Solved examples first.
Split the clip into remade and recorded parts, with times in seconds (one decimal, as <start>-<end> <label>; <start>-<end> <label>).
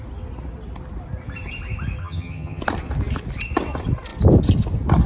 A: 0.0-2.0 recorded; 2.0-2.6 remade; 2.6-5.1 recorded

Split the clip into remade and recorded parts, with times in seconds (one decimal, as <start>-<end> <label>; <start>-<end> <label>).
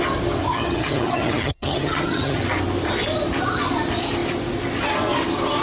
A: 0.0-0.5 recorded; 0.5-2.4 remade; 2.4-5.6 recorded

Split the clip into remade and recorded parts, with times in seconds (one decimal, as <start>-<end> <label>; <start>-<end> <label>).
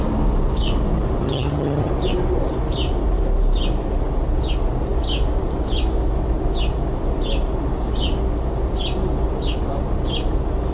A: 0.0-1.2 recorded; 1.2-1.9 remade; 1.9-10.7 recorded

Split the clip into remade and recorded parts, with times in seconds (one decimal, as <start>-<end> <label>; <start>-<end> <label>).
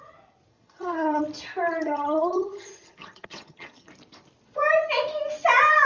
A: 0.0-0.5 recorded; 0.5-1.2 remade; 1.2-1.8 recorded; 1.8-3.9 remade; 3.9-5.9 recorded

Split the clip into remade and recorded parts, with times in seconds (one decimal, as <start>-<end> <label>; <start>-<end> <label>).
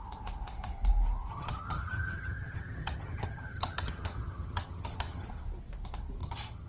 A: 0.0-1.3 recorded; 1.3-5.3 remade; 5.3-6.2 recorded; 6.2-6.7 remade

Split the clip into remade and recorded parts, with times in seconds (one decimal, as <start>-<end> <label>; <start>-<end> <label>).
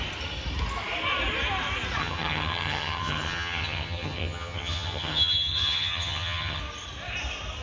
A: 0.0-2.0 recorded; 2.0-6.6 remade; 6.6-7.6 recorded